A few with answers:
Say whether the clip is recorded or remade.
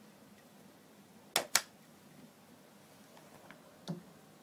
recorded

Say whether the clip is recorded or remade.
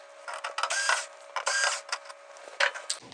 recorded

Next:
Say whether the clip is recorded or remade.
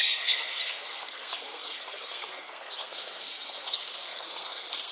remade